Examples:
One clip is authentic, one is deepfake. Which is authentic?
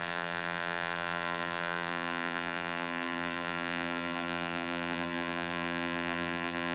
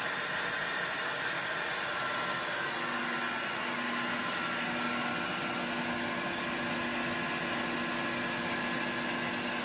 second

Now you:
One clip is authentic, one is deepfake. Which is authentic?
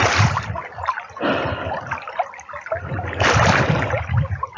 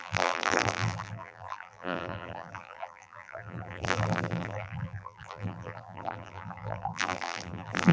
first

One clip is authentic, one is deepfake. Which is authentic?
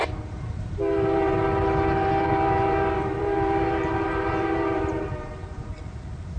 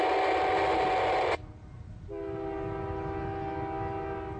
second